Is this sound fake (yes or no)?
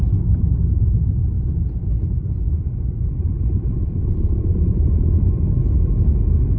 no